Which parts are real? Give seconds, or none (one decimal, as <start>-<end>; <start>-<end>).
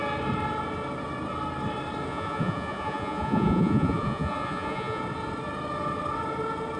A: 0.0-2.1; 5.0-6.8